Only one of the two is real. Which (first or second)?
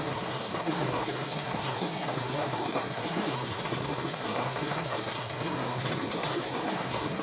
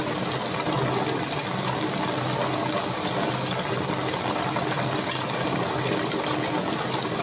second